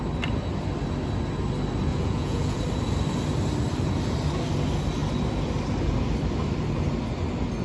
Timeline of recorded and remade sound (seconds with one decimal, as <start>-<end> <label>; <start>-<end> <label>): 0.0-1.9 recorded; 1.9-2.6 remade; 2.6-7.6 recorded